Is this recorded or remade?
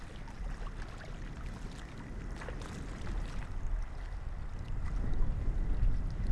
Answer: recorded